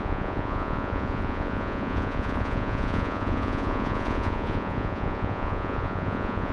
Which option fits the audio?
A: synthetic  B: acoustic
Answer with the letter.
A